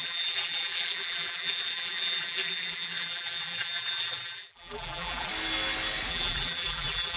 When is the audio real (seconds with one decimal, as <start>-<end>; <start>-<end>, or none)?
5.3-6.1